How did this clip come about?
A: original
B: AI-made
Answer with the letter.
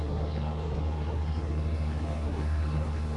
B